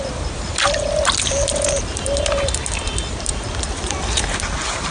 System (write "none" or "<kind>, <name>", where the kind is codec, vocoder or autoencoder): none